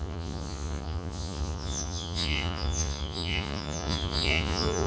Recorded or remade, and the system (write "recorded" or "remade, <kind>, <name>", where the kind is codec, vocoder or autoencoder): remade, vocoder, Vocos